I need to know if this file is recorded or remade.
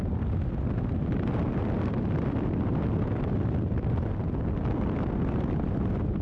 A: remade